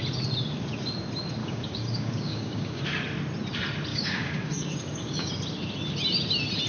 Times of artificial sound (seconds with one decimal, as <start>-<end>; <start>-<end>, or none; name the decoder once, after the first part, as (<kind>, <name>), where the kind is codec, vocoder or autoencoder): 1.4-2.8 (codec, DAC); 3.9-5.3